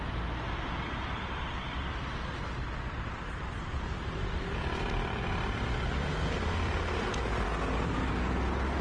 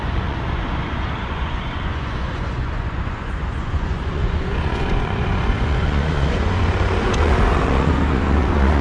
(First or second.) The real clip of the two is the first